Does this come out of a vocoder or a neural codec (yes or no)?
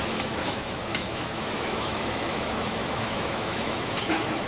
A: yes